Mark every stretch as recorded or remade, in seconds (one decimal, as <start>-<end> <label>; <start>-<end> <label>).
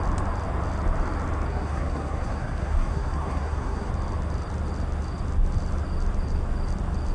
0.0-1.5 recorded; 1.5-3.9 remade; 3.9-7.1 recorded